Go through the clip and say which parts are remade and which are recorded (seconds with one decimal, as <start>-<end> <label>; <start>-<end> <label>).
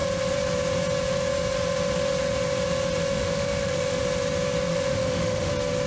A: 0.0-3.0 recorded; 3.0-4.0 remade; 4.0-4.7 recorded; 4.7-5.5 remade; 5.5-5.9 recorded